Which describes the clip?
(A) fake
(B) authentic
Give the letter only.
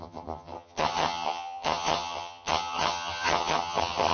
A